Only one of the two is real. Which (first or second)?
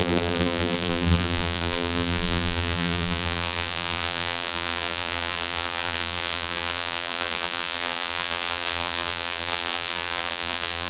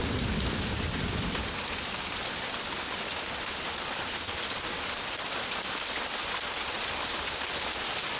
second